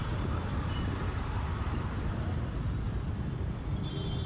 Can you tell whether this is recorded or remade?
remade